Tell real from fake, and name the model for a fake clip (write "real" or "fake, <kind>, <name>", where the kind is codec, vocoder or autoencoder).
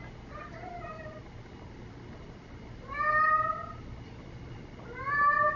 real